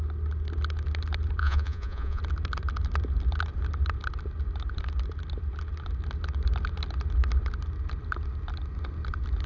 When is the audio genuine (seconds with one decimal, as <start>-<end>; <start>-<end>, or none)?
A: 0.0-1.4; 2.2-9.5